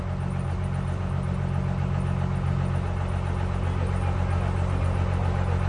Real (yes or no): yes